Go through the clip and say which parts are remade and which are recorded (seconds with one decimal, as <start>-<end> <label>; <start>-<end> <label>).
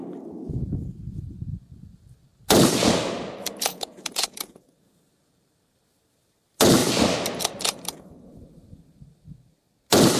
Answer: 0.0-3.7 recorded; 3.7-4.9 remade; 4.9-10.2 recorded